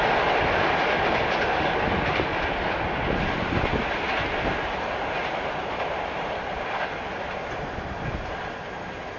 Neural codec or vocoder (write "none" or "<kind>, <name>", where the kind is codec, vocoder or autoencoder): none